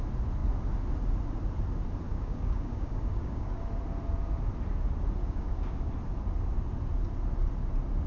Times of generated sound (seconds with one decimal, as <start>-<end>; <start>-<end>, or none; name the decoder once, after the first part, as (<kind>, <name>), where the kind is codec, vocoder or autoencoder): 2.1-3.6 (codec, DAC); 5.2-5.9